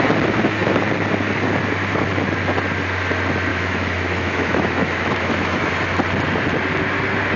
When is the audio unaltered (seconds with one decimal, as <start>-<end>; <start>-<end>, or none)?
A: 0.0-3.5; 5.7-7.4